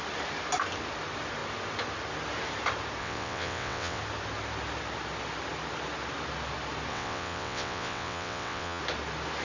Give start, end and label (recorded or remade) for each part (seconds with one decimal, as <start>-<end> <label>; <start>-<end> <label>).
0.0-3.0 recorded; 3.0-4.0 remade; 4.0-6.9 recorded; 6.9-8.8 remade; 8.8-9.4 recorded